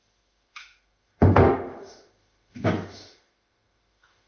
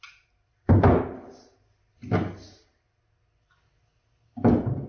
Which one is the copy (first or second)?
first